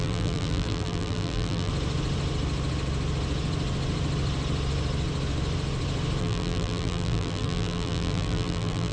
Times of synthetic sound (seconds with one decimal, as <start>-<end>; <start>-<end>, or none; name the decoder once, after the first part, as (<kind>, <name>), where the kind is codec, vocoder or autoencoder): 0.0-1.7 (vocoder, BigVGAN v2); 6.2-8.9